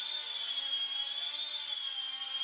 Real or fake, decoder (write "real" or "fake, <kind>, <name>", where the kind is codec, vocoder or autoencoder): real